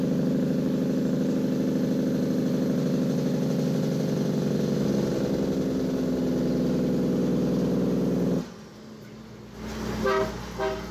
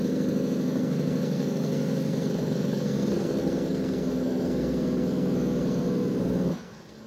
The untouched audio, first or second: first